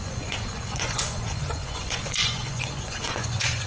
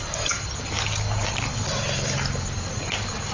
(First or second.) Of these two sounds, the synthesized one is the first